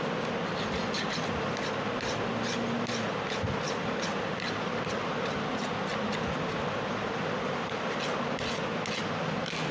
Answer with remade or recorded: recorded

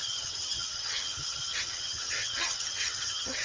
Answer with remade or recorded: remade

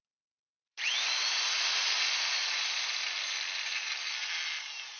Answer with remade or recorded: recorded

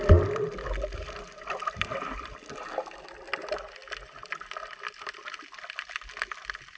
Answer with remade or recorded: recorded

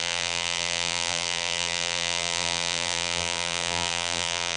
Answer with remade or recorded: remade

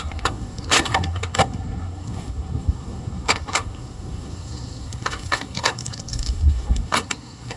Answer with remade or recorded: remade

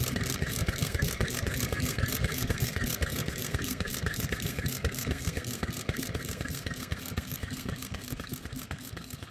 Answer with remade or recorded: remade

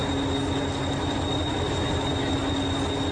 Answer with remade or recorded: recorded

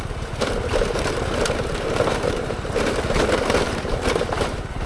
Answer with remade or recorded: remade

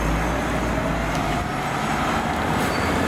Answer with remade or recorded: recorded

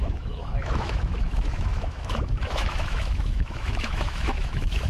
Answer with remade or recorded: remade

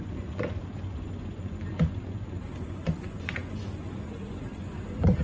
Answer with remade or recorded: remade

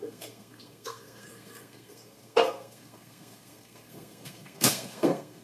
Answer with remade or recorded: remade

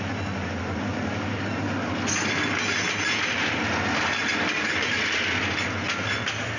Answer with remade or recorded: recorded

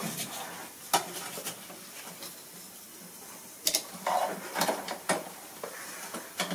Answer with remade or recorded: recorded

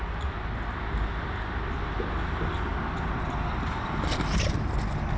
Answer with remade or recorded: recorded